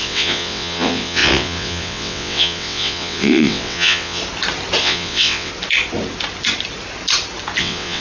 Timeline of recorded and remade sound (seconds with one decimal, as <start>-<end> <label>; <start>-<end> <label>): 0.0-4.2 remade; 4.2-4.8 recorded; 4.8-5.5 remade; 5.5-7.6 recorded; 7.6-8.0 remade